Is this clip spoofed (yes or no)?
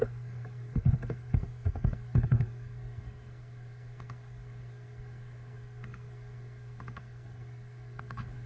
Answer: yes